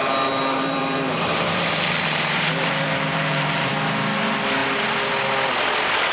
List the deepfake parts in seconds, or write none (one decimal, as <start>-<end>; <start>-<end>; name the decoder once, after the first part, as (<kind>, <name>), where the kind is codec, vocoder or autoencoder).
0.0-3.7 (vocoder, BigVGAN v2)